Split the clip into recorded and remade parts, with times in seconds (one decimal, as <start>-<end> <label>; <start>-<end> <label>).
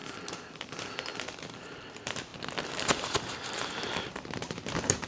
0.0-1.6 recorded; 1.6-2.3 remade; 2.3-4.1 recorded; 4.1-5.1 remade